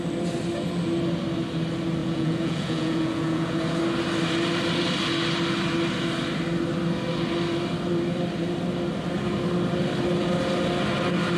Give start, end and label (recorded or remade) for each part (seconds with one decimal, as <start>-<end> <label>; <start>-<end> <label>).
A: 0.0-2.0 recorded; 2.0-3.8 remade; 3.8-11.4 recorded

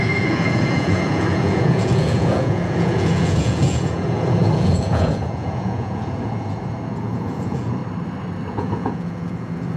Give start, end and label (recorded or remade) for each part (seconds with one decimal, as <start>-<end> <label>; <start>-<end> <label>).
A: 0.0-7.8 remade; 7.8-8.5 recorded; 8.5-9.8 remade

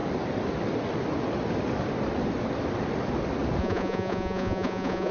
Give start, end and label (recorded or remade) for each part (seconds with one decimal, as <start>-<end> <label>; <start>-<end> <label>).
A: 0.0-3.6 recorded; 3.6-5.1 remade

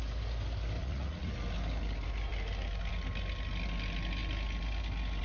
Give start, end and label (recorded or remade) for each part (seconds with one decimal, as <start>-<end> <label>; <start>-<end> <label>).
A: 0.0-0.8 recorded; 0.8-1.3 remade; 1.3-5.2 recorded

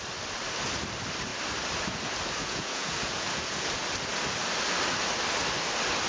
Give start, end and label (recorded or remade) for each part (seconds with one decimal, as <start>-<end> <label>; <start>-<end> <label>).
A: 0.0-2.4 recorded; 2.4-3.7 remade; 3.7-6.1 recorded

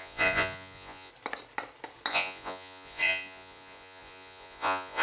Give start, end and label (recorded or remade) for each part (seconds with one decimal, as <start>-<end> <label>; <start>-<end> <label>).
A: 0.0-1.1 remade; 1.1-2.1 recorded; 2.1-5.0 remade